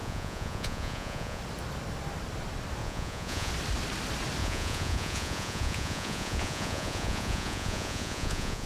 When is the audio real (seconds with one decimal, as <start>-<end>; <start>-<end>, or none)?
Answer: 1.4-2.8; 3.5-4.4